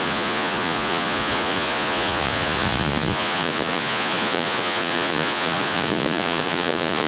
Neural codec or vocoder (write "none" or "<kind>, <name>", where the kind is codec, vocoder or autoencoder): vocoder, Vocos